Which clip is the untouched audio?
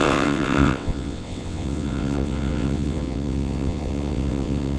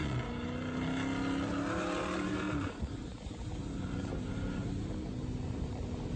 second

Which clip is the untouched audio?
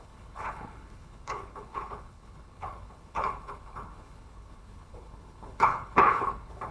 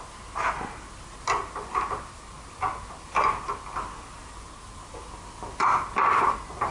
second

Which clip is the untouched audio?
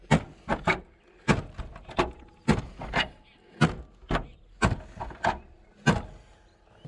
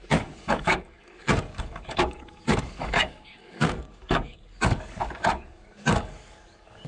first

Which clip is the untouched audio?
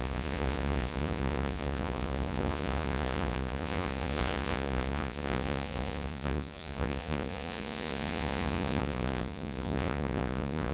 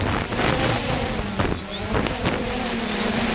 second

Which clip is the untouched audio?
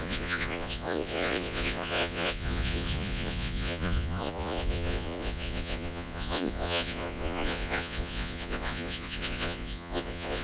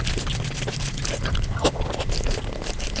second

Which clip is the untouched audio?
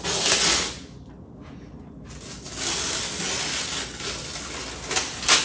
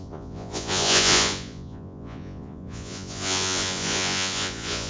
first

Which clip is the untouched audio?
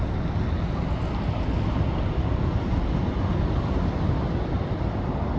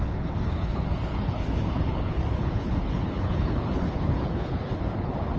first